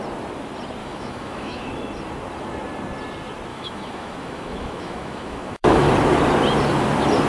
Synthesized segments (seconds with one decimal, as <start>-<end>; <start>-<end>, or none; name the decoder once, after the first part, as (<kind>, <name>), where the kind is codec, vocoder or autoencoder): 0.8-1.7 (autoencoder, DAC-VAE); 3.5-5.9